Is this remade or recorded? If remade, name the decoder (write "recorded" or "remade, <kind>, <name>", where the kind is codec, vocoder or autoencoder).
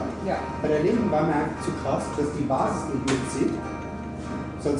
recorded